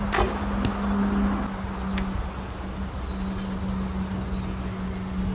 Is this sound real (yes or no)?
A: yes